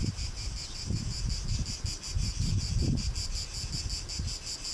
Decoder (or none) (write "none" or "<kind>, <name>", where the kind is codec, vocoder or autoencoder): none